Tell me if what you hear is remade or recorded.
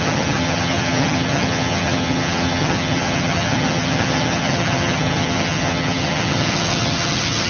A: remade